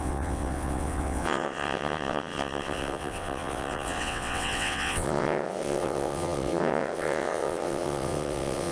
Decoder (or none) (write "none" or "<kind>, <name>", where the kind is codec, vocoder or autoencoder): vocoder, WaveNeXt